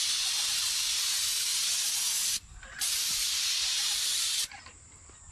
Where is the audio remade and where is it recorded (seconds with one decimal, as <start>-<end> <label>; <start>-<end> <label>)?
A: 0.0-1.5 remade; 1.5-3.1 recorded; 3.1-5.3 remade

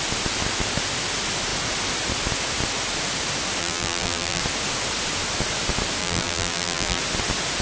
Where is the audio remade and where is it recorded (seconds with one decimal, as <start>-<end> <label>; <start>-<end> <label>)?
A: 0.0-3.6 recorded; 3.6-4.4 remade; 4.4-6.0 recorded; 6.0-7.0 remade; 7.0-7.6 recorded

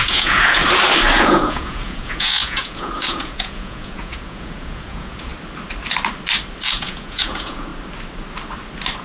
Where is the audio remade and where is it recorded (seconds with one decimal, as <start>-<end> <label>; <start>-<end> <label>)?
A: 0.0-0.6 remade; 0.6-1.2 recorded; 1.2-5.3 remade; 5.3-6.7 recorded; 6.7-7.7 remade; 7.7-9.0 recorded

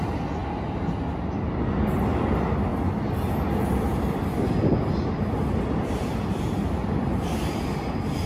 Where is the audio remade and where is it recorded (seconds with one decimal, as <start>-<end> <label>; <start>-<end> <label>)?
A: 0.0-8.3 recorded

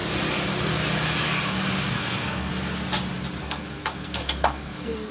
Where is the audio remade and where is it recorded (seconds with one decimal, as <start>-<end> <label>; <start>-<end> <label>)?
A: 0.0-1.9 recorded; 1.9-2.5 remade; 2.5-3.4 recorded; 3.4-5.1 remade

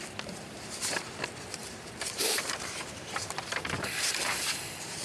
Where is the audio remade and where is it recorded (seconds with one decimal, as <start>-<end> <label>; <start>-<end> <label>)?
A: 0.0-1.6 recorded; 1.6-4.6 remade; 4.6-5.0 recorded